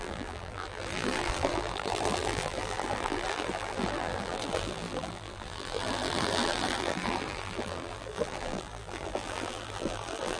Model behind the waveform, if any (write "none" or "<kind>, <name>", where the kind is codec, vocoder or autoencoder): vocoder, BigVGAN v2